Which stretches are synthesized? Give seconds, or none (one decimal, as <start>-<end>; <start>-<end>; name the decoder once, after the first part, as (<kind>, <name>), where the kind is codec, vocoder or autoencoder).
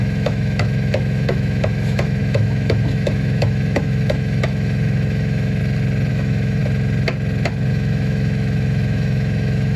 0.0-5.6 (autoencoder, DAC-VAE); 6.1-6.6; 7.7-9.8